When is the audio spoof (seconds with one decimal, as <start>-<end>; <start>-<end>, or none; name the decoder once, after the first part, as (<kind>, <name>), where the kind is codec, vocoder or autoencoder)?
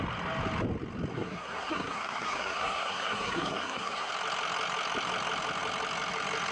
1.1-4.1 (codec, SNAC)